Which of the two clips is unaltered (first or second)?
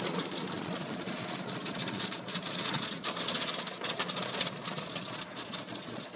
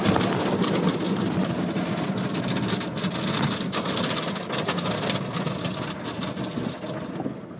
second